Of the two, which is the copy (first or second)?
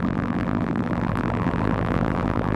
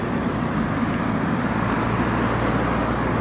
first